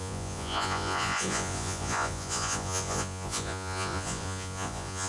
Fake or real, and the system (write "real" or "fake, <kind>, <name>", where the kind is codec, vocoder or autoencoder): fake, vocoder, Vocos